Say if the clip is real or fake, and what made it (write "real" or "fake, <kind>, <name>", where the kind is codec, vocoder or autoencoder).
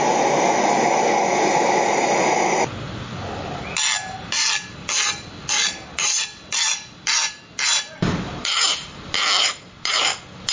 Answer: real